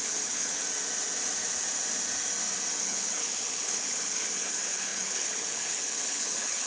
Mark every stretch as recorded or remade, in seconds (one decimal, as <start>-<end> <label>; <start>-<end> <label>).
0.0-0.6 remade; 0.6-2.8 recorded; 2.8-6.7 remade